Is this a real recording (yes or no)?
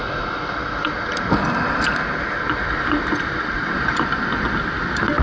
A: yes